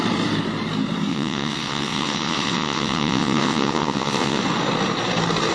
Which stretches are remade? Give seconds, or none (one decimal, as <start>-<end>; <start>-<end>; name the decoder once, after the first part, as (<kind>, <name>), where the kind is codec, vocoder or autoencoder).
1.1-4.4 (vocoder, WaveNeXt)